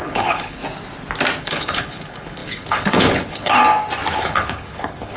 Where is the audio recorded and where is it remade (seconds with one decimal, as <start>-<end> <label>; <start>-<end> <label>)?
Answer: 0.0-0.6 remade; 0.6-1.4 recorded; 1.4-3.6 remade; 3.6-4.1 recorded; 4.1-5.2 remade